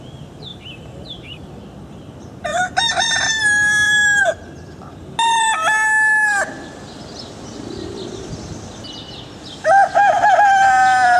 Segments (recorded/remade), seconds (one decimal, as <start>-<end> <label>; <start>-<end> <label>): 0.0-0.5 recorded; 0.5-1.6 remade; 1.6-2.5 recorded; 2.5-4.2 remade; 4.2-11.2 recorded